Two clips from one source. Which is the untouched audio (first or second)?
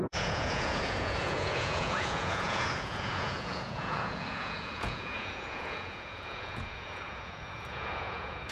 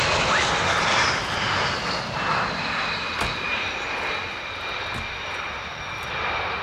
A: second